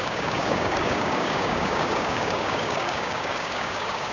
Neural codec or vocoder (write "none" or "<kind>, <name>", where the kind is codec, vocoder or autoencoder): codec, DAC